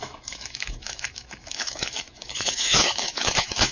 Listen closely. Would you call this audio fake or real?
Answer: fake